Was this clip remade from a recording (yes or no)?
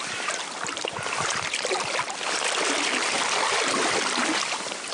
no